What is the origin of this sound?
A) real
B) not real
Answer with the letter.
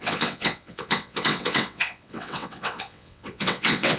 B